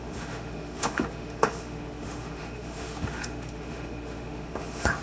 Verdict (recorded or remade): remade